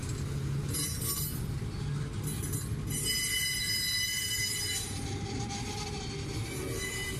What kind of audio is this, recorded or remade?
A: recorded